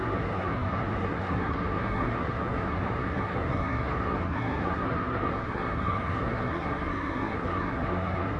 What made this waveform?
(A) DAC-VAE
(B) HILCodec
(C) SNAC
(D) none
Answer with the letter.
C